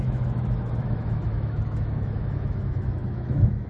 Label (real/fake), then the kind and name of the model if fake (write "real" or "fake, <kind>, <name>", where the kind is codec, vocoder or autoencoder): fake, autoencoder, DAC-VAE